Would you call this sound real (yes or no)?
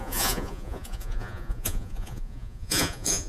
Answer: no